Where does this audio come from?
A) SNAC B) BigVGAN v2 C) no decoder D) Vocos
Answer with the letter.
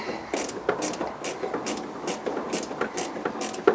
C